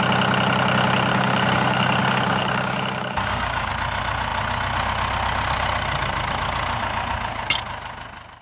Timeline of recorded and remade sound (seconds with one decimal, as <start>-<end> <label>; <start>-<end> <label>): 0.0-1.1 recorded; 1.1-3.7 remade; 3.7-8.4 recorded